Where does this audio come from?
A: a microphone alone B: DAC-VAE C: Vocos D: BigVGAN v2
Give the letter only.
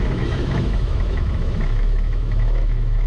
B